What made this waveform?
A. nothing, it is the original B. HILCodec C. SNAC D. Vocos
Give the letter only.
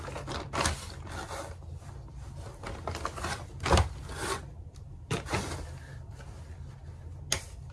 A